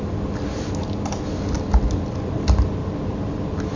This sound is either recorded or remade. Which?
recorded